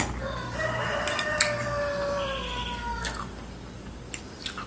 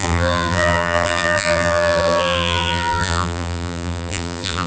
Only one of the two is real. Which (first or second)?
first